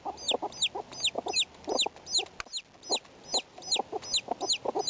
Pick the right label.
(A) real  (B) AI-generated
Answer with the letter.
A